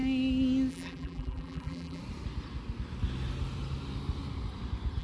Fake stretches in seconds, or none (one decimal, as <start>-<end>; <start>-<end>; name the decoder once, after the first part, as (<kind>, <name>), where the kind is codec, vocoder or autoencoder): 0.7-2.0 (vocoder, BigVGAN v2)